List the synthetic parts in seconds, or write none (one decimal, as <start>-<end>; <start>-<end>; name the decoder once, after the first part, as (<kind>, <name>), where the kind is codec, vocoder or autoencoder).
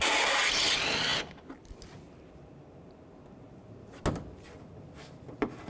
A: none